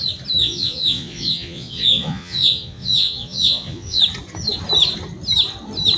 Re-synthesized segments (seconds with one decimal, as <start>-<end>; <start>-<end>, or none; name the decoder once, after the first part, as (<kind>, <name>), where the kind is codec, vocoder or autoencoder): 0.4-4.0 (vocoder, Vocos)